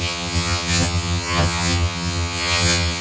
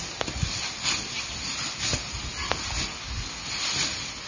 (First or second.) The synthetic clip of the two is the first